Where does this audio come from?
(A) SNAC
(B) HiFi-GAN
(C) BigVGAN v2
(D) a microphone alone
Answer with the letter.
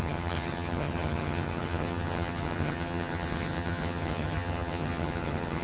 B